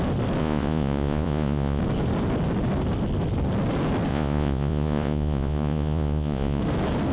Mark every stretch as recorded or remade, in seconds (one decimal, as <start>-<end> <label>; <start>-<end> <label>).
0.0-0.4 recorded; 0.4-1.8 remade; 1.8-4.1 recorded; 4.1-6.6 remade; 6.6-7.1 recorded